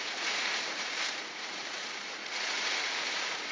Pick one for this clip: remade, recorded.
remade